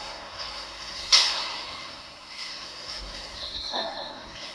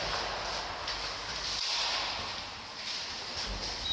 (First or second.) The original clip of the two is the second